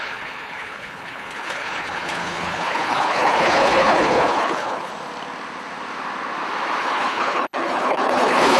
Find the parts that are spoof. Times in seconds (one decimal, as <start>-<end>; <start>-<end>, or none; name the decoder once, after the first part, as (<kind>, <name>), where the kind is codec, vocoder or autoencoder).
0.0-4.9 (codec, HILCodec); 6.8-8.6